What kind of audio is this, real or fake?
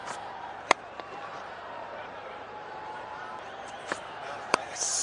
fake